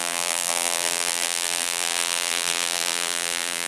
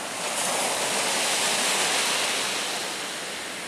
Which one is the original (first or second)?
second